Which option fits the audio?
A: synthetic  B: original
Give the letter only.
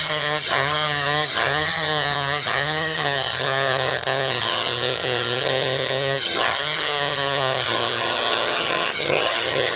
A